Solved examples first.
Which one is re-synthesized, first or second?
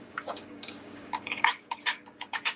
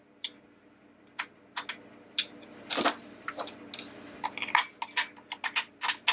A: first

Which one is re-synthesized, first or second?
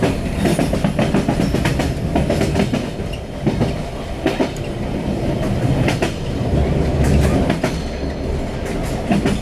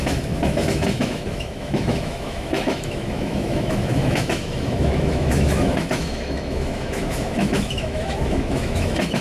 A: second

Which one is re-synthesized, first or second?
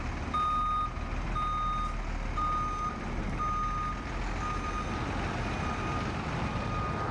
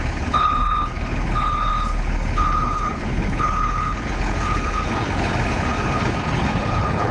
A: second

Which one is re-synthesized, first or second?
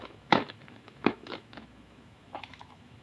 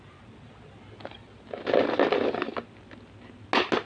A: first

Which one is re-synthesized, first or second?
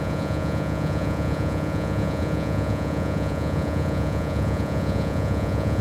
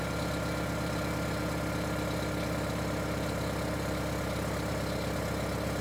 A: first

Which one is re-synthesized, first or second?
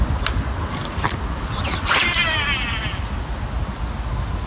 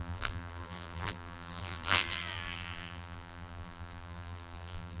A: second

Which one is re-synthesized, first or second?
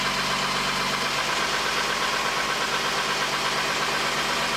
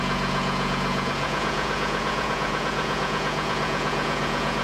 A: second